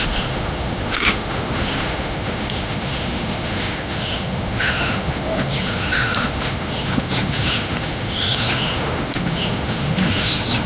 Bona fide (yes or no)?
no